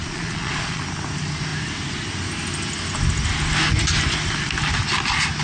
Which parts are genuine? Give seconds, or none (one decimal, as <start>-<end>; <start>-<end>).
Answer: 0.8-5.4